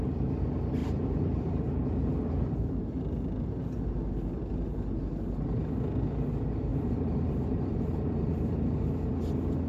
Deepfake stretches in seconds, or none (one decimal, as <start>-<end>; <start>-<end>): 0.8-2.1; 6.7-8.9